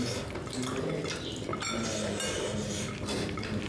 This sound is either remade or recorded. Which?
recorded